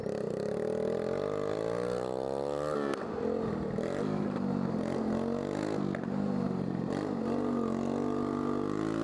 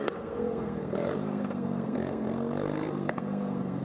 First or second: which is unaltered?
first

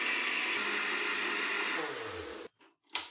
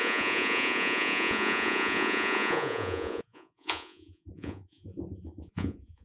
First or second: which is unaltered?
first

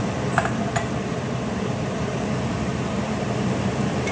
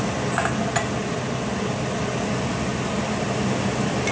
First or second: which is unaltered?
second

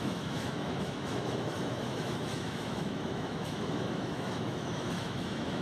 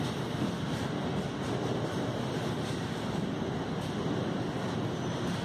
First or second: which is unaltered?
second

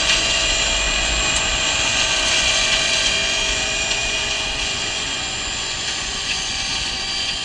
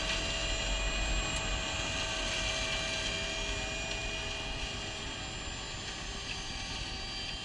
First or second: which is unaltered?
second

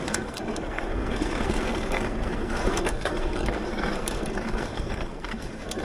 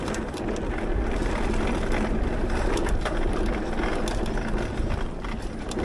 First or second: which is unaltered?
second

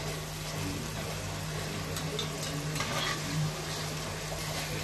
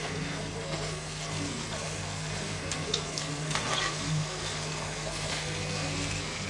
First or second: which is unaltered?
first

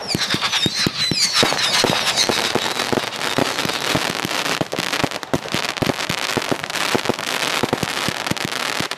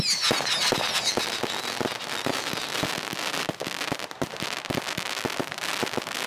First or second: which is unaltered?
second